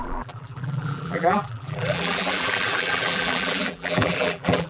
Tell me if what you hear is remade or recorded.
remade